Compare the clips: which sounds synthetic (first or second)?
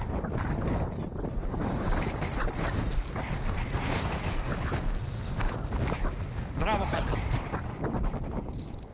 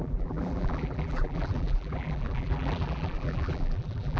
second